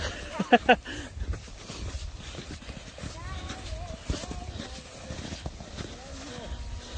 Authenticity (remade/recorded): recorded